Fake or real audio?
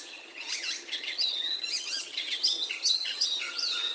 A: fake